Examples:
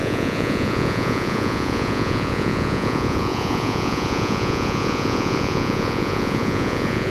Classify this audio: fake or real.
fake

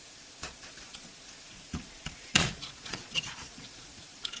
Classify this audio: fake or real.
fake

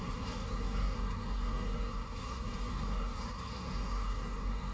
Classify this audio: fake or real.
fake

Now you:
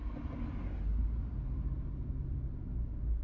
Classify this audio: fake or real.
real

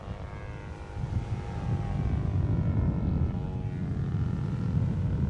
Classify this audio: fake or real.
real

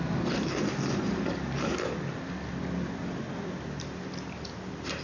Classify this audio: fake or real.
real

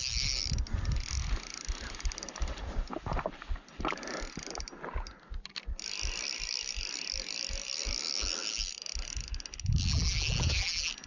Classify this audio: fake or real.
real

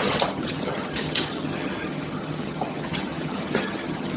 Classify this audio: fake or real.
fake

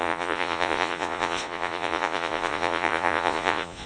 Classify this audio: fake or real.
fake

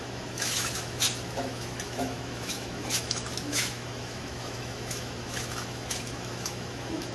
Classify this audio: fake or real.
fake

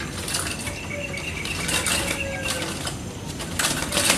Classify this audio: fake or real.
real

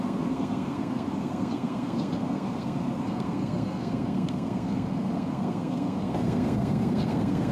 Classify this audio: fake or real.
fake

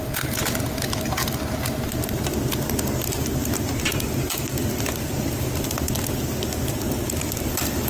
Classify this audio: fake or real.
real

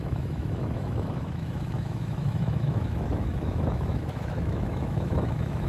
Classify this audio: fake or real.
fake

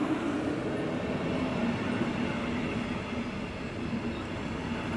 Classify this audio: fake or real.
real